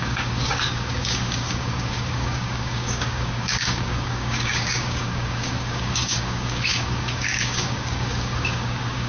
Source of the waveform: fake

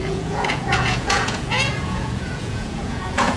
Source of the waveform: fake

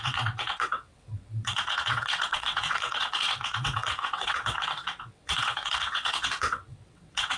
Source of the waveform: fake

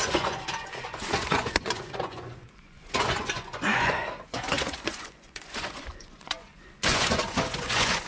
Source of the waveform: fake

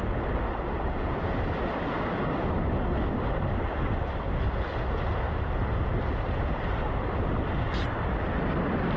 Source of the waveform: real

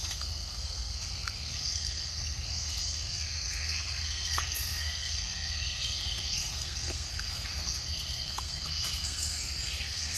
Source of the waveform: fake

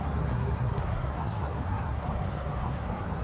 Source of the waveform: fake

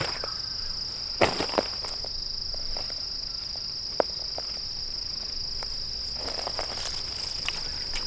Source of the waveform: real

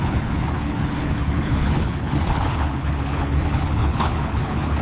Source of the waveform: fake